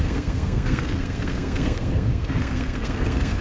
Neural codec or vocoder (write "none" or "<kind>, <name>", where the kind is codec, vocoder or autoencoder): codec, SNAC